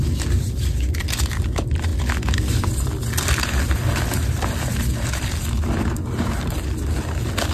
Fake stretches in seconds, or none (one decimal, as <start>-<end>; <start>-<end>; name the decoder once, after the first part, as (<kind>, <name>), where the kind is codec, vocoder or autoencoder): none

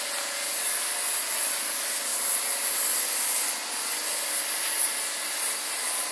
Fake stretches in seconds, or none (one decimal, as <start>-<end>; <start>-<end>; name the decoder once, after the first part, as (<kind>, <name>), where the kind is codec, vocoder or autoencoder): none

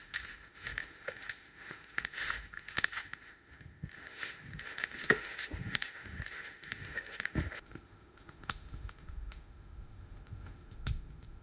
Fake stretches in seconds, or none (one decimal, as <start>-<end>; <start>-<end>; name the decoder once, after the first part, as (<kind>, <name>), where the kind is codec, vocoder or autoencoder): 0.0-11.4 (autoencoder, DAC-VAE)

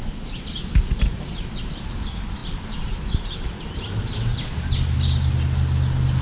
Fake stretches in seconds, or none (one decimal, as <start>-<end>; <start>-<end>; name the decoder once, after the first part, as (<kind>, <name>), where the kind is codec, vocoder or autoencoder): none

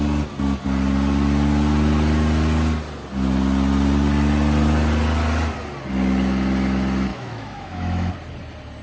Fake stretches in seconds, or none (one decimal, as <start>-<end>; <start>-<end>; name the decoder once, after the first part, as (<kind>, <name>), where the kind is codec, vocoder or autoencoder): 7.1-8.1 (autoencoder, DAC-VAE)